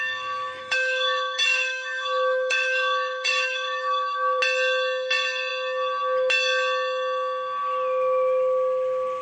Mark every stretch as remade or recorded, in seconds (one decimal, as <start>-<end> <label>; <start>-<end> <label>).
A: 0.0-0.6 recorded; 0.6-4.4 remade; 4.4-9.2 recorded